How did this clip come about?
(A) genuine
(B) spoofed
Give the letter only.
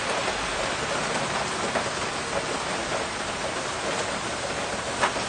A